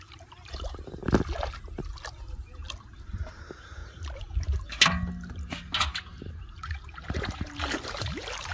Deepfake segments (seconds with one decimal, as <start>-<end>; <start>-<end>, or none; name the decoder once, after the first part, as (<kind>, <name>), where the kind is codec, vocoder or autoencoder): 0.0-1.0 (vocoder, BigVGAN v2); 3.3-3.8; 6.3-8.5